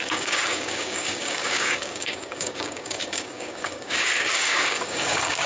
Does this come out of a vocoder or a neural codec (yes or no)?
yes